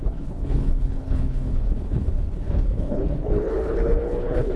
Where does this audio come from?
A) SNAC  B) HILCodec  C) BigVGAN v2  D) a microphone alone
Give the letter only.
B